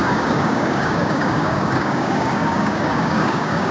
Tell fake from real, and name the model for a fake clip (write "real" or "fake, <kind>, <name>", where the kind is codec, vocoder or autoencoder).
fake, codec, DAC